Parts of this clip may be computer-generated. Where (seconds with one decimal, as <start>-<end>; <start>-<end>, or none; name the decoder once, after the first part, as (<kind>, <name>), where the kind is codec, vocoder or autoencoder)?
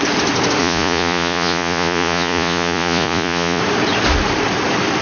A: 0.6-3.6 (vocoder, Vocos)